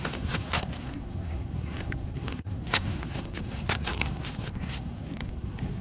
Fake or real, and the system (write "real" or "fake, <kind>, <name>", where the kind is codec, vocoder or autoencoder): fake, codec, SNAC